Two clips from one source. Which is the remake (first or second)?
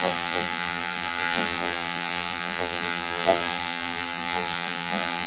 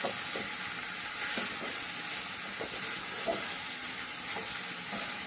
first